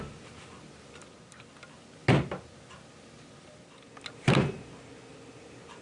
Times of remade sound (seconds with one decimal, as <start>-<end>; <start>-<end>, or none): none